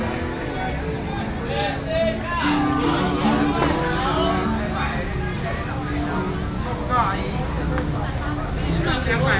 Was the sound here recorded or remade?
recorded